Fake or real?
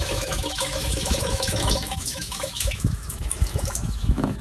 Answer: fake